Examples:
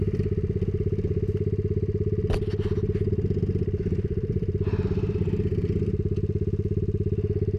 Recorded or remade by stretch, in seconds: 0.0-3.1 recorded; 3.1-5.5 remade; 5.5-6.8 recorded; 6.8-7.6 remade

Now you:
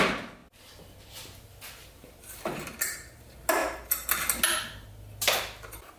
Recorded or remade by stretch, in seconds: 0.0-6.0 recorded

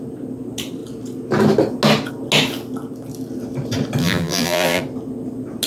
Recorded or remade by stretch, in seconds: 0.0-4.0 recorded; 4.0-4.8 remade; 4.8-5.7 recorded